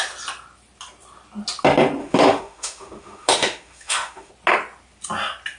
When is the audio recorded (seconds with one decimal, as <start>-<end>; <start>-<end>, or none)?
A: 0.0-2.0; 4.3-5.6